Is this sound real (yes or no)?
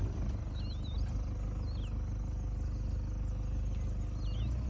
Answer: yes